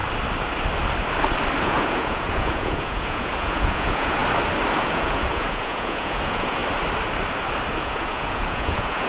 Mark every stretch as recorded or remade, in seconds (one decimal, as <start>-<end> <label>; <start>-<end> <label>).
0.0-1.6 recorded; 1.6-4.2 remade; 4.2-4.8 recorded; 4.8-6.6 remade; 6.6-7.8 recorded; 7.8-9.1 remade